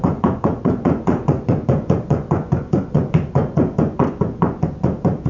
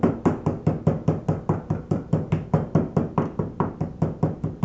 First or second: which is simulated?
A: first